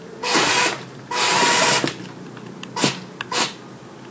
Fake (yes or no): no